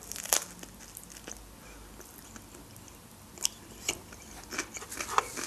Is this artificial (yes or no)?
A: no